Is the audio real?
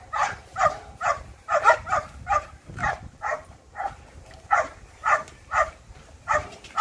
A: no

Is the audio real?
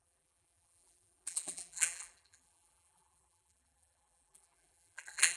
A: no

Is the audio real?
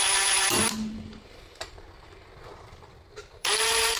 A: no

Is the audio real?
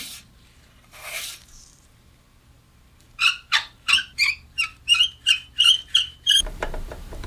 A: no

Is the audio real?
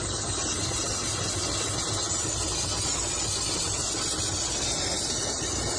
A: yes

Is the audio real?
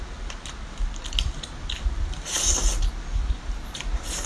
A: yes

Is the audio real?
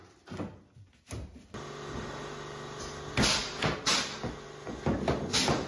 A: yes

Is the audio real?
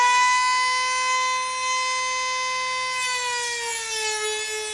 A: yes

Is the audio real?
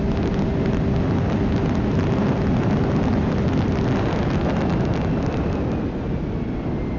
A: yes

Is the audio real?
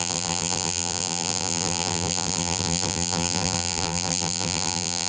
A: no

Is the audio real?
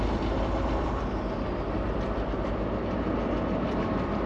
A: no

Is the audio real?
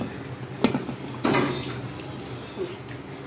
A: yes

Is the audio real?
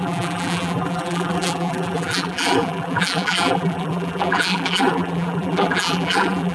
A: no